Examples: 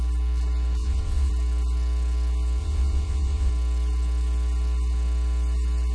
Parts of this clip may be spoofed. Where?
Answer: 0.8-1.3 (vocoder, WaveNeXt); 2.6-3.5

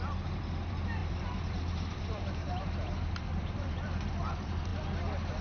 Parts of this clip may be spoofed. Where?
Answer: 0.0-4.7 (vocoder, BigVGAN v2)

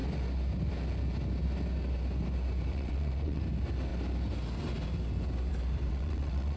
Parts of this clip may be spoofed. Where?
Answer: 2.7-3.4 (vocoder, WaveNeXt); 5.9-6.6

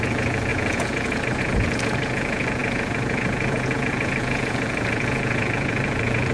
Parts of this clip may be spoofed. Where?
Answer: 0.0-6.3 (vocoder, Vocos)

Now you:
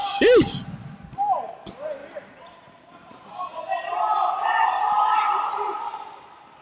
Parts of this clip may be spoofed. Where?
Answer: 0.0-0.6 (vocoder, BigVGAN v2); 2.0-3.6

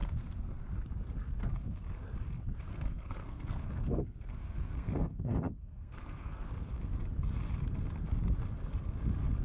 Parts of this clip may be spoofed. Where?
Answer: 0.0-0.7 (codec, SNAC); 2.7-6.5

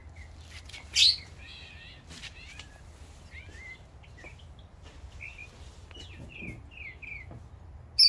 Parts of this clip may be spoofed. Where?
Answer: 5.4-5.9 (vocoder, BigVGAN v2)

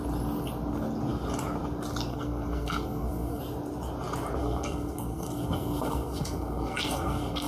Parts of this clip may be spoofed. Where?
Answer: 2.1-3.4 (codec, SNAC); 4.4-7.5